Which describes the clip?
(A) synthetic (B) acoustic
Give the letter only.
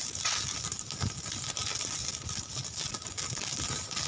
B